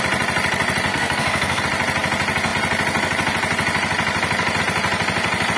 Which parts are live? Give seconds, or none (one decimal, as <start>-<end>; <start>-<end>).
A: 0.0-0.9; 1.6-5.6